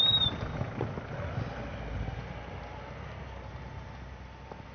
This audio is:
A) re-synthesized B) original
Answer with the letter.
B